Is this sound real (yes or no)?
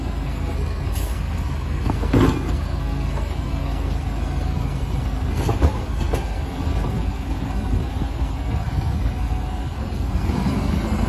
no